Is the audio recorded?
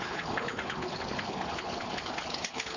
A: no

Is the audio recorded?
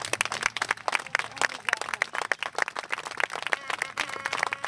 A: yes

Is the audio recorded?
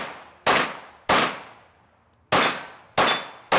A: yes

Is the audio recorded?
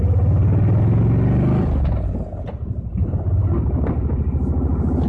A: yes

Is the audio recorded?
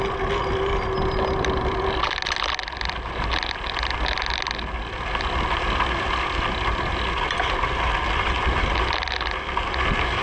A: yes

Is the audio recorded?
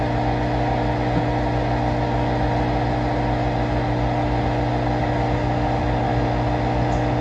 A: yes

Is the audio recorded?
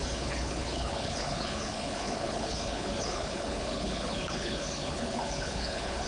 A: no